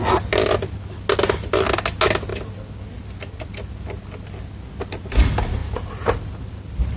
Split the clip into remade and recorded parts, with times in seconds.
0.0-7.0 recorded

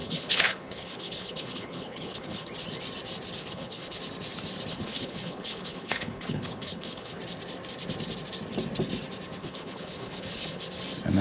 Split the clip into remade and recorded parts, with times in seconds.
0.0-2.5 remade; 2.5-3.4 recorded; 3.4-4.0 remade; 4.0-4.7 recorded; 4.7-7.2 remade; 7.2-9.4 recorded; 9.4-10.6 remade; 10.6-11.2 recorded

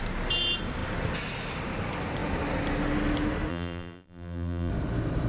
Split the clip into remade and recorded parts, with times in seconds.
0.0-3.5 recorded; 3.5-4.7 remade; 4.7-5.3 recorded

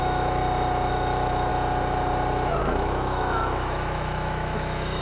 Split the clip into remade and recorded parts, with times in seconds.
0.0-0.4 remade; 0.4-0.9 recorded; 0.9-1.5 remade; 1.5-2.6 recorded; 2.6-5.0 remade

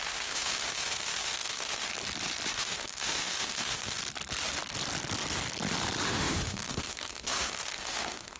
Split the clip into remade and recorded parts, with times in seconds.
0.0-1.9 remade; 1.9-2.5 recorded; 2.5-4.0 remade; 4.0-6.1 recorded; 6.1-8.4 remade

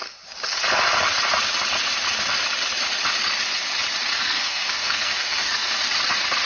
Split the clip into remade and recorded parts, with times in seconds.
0.0-4.2 recorded; 4.2-5.8 remade; 5.8-6.4 recorded

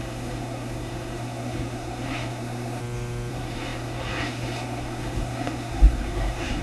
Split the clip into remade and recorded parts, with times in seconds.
0.0-2.8 remade; 2.8-3.3 recorded; 3.3-6.6 remade

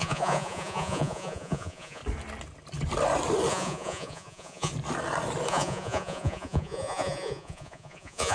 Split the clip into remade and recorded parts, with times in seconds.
0.0-2.0 remade; 2.0-3.5 recorded; 3.5-4.7 remade; 4.7-5.5 recorded; 5.5-8.3 remade